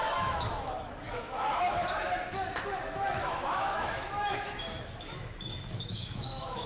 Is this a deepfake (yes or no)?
yes